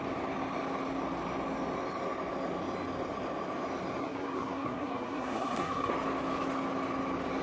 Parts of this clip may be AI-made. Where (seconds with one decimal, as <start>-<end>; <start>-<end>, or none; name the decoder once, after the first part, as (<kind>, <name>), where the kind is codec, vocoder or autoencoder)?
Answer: 4.0-5.9 (codec, SNAC)